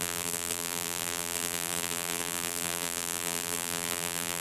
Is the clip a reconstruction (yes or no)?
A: yes